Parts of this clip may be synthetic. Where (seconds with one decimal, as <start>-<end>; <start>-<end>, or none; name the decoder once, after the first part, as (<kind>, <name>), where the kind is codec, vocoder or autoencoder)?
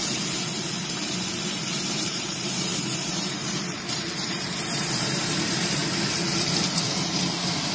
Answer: 0.0-5.8 (vocoder, BigVGAN v2); 6.5-7.7